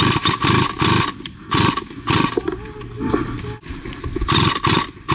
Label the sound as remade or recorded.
recorded